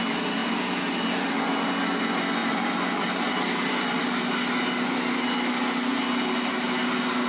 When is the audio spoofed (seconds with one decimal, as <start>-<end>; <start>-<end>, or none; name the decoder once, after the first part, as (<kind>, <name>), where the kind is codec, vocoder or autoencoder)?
2.4-4.0 (vocoder, BigVGAN v2)